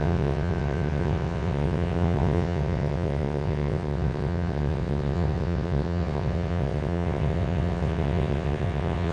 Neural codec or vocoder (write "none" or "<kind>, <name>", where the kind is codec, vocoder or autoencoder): vocoder, WaveNeXt